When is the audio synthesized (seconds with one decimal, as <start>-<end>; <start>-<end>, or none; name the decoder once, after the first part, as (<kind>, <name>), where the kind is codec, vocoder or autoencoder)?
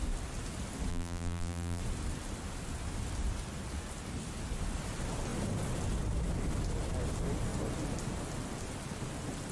0.9-1.8 (vocoder, BigVGAN v2)